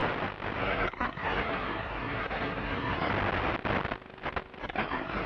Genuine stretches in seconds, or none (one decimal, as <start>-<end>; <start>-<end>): 0.0-0.6; 3.1-4.6